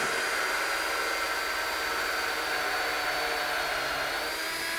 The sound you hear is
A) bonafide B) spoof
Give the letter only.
A